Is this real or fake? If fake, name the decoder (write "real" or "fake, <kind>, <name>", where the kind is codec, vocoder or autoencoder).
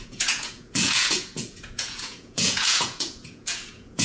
fake, vocoder, Vocos